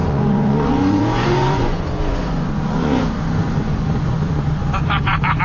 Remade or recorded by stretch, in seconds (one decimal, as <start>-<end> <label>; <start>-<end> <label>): 0.0-3.0 remade; 3.0-3.4 recorded; 3.4-5.4 remade